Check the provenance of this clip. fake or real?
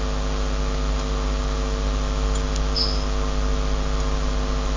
real